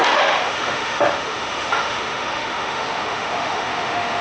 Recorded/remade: remade